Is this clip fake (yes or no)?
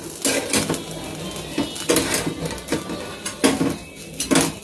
no